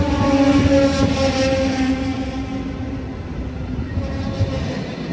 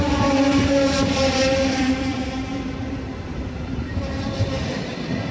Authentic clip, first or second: first